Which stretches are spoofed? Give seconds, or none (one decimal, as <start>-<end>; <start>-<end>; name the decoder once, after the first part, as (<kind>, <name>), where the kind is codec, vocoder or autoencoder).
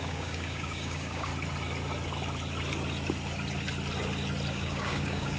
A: 0.0-1.3 (codec, DAC); 4.5-5.4